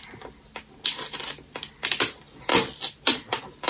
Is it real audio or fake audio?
real